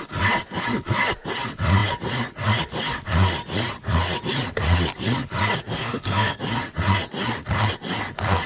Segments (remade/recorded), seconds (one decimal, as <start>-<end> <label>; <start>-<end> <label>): 0.0-5.8 recorded; 5.8-6.4 remade; 6.4-8.5 recorded